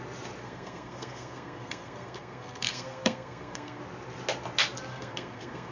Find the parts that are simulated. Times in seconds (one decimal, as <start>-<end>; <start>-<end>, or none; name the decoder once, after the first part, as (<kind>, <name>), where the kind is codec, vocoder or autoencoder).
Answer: 0.4-3.8 (codec, SNAC); 4.9-5.7